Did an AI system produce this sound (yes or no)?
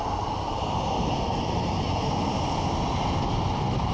no